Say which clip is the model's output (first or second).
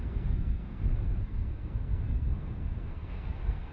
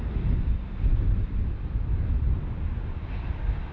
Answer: first